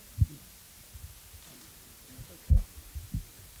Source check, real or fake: real